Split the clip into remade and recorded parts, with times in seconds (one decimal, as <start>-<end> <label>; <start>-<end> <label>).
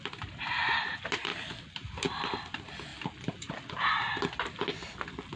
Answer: 0.0-5.4 recorded